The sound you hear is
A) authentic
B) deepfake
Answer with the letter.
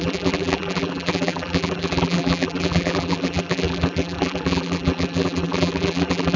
B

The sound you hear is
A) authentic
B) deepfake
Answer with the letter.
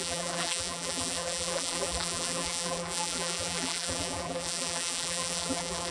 B